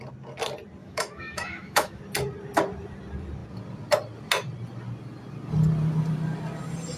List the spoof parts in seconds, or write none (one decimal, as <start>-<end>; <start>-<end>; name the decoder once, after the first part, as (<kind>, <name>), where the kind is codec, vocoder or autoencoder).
0.8-2.0 (autoencoder, DAC-VAE)